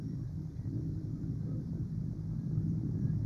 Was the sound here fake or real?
fake